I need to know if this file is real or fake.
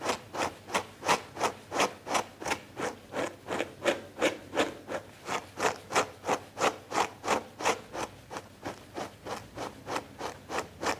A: real